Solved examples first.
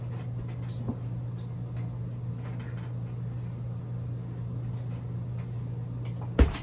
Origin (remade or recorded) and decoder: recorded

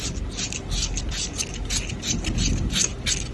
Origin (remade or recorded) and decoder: recorded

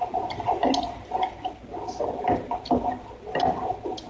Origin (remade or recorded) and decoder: recorded